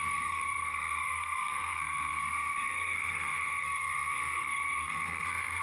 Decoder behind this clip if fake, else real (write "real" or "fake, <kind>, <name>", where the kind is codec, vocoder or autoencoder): fake, codec, SNAC